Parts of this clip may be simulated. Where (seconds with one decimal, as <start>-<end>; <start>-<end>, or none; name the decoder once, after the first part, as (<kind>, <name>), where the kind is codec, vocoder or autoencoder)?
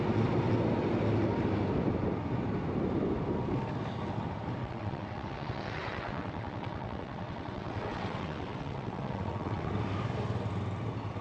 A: 4.6-9.7 (vocoder, WaveNeXt)